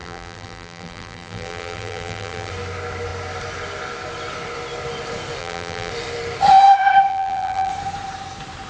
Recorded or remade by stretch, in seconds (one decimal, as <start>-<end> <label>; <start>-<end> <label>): 0.0-2.5 remade; 2.5-5.4 recorded; 5.4-5.9 remade; 5.9-7.1 recorded; 7.1-7.7 remade; 7.7-8.7 recorded